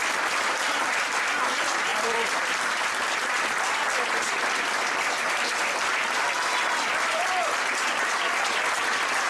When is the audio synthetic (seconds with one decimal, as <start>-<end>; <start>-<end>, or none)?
0.0-1.2; 1.9-3.5; 4.4-9.3